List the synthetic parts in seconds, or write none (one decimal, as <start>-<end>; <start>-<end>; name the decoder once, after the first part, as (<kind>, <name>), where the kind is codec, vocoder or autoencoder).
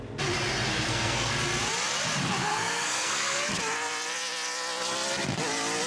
0.7-1.3 (codec, SNAC); 2.4-3.5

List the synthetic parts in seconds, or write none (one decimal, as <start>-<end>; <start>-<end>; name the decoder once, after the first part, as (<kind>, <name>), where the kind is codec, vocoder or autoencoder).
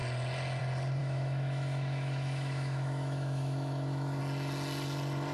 1.0-4.2 (autoencoder, DAC-VAE)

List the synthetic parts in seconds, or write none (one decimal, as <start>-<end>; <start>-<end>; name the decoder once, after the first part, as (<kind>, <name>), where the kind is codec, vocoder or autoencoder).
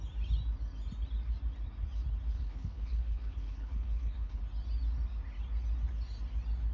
2.3-4.4 (codec, HILCodec)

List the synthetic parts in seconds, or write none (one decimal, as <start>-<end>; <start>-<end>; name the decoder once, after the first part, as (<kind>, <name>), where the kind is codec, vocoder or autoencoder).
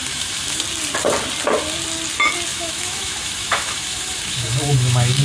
0.0-0.6 (autoencoder, DAC-VAE); 2.5-5.2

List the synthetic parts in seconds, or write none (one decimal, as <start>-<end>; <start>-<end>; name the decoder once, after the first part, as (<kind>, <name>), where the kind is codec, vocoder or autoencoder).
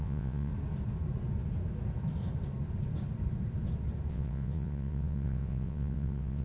0.0-0.5 (vocoder, WaveNeXt); 4.1-6.4